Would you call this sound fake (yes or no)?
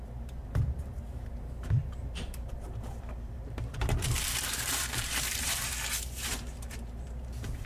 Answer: yes